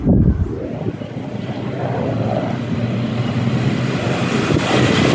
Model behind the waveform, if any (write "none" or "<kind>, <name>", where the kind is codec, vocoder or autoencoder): none